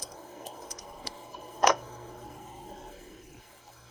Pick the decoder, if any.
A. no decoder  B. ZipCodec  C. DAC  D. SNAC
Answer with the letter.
D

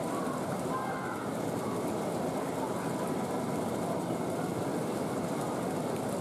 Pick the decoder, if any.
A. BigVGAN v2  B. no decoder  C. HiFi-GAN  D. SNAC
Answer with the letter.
B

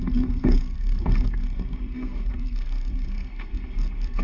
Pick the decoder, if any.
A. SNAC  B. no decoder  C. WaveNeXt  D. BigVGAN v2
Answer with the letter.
A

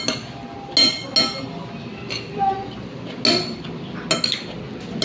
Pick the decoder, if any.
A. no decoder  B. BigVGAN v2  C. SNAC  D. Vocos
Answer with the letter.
A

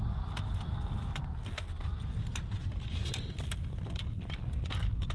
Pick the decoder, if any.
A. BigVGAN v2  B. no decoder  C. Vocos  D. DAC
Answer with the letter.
B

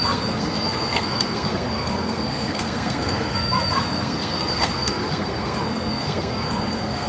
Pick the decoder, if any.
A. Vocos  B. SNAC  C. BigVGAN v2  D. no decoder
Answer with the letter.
B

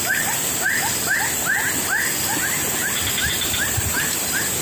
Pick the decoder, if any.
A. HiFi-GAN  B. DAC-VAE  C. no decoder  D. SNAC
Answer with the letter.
C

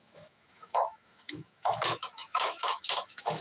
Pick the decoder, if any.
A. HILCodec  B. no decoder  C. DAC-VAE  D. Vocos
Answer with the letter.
C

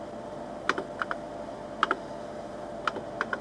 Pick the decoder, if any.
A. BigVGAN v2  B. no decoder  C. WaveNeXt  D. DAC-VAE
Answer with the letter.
B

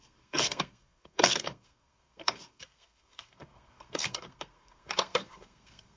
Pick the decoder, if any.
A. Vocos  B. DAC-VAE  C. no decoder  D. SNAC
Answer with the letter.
D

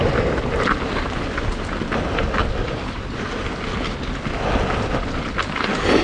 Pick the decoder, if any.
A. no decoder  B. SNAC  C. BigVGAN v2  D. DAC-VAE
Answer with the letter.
A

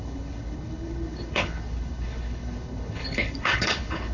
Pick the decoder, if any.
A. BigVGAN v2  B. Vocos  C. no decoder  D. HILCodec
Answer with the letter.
D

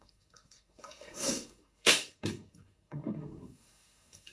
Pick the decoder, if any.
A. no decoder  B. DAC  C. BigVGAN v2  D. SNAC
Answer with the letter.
D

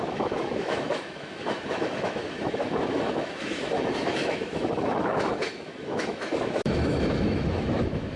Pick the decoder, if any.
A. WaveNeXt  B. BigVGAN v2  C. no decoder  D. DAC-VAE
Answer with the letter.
D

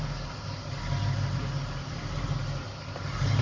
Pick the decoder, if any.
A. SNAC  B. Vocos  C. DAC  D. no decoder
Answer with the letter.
D